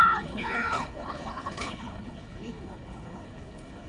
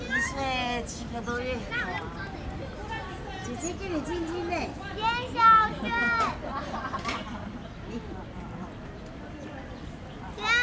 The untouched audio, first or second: second